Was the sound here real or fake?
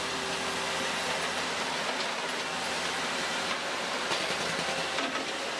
real